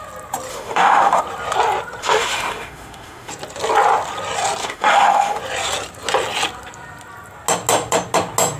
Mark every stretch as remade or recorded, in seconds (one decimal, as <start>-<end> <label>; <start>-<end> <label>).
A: 0.0-0.5 recorded; 0.5-1.2 remade; 1.2-2.0 recorded; 2.0-3.3 remade; 3.3-4.6 recorded; 4.6-5.4 remade; 5.4-8.6 recorded